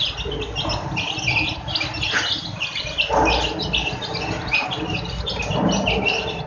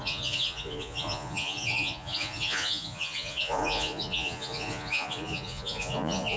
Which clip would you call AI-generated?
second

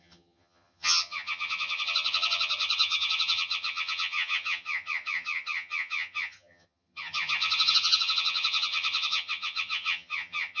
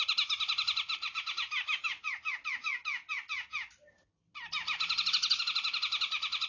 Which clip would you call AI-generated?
first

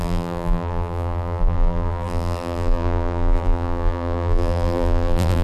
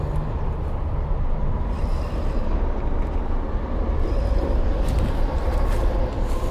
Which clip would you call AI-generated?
first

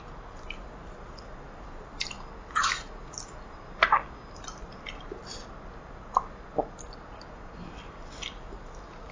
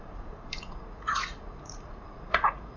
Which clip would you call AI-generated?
second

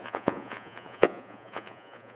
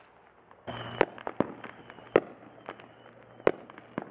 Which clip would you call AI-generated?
first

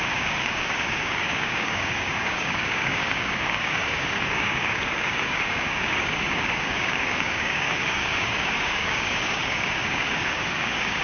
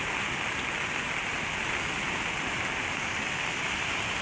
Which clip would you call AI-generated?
first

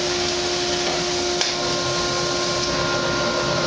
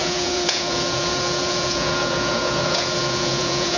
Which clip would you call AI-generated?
second